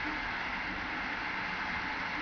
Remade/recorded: recorded